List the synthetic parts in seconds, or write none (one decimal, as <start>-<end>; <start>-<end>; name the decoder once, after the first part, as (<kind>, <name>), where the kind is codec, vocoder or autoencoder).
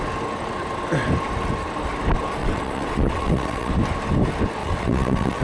2.4-3.7 (vocoder, WaveNeXt); 4.6-5.4